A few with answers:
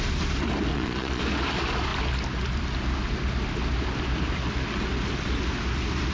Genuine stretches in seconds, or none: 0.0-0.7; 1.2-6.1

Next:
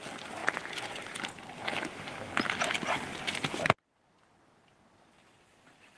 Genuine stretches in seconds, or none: 0.0-6.0

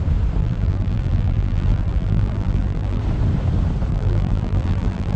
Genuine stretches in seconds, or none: 0.0-0.4; 3.0-3.9

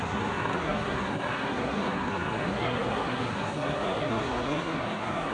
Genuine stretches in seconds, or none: none